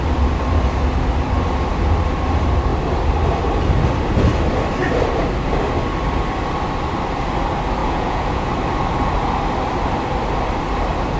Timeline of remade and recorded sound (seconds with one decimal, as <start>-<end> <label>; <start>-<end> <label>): 0.0-7.8 recorded; 7.8-8.5 remade; 8.5-11.2 recorded